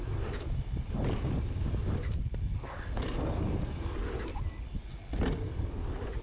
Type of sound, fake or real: real